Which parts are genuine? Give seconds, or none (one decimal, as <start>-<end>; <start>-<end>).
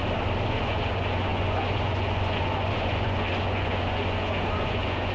0.0-0.6